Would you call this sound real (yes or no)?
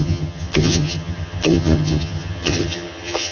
no